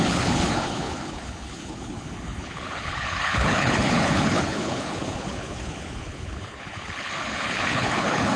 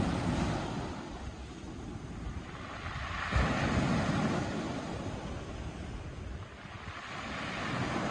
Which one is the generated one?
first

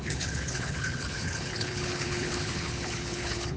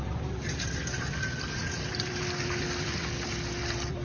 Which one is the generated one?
first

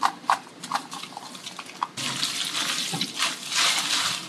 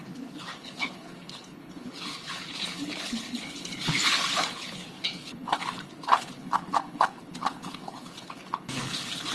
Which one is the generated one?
second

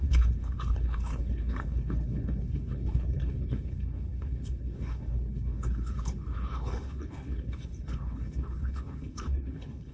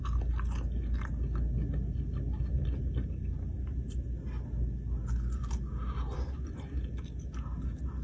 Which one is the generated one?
first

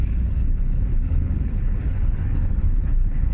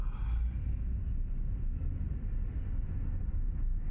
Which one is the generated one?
first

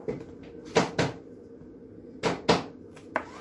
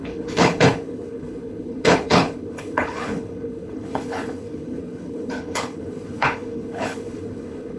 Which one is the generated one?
second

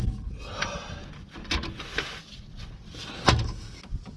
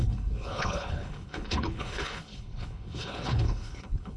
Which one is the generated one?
second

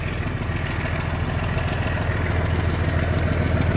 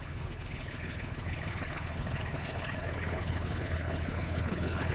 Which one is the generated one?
second